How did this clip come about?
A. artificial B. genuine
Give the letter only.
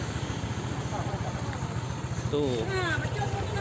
B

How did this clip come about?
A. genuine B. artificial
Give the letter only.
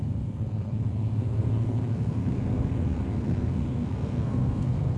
B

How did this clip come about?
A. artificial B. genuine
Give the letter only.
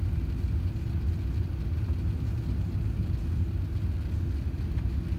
B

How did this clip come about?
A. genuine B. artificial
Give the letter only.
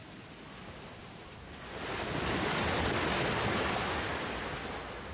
A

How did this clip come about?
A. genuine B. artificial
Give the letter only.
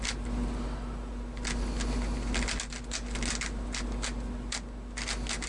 A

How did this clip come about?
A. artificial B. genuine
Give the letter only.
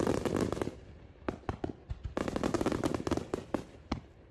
B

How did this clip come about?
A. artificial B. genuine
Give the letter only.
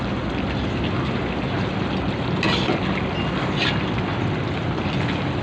B